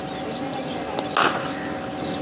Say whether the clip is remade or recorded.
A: recorded